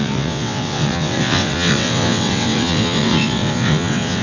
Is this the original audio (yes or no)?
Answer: no